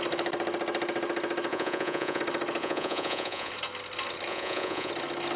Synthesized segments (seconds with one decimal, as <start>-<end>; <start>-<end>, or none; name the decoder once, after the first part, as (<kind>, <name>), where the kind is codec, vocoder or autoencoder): 1.5-2.2 (vocoder, Vocos); 2.6-3.5; 4.3-4.9